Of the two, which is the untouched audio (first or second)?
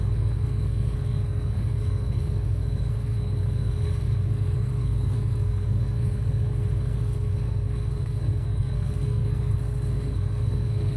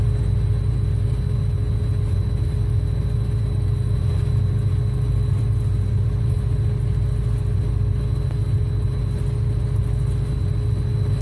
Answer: second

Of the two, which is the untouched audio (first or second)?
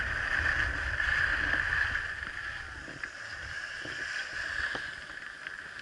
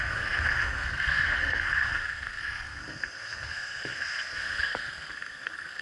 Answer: first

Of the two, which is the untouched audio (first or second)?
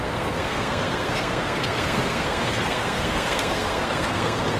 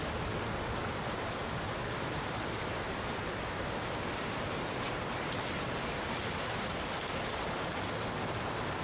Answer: second